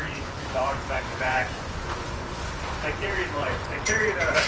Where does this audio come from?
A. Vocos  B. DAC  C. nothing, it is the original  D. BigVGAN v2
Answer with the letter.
A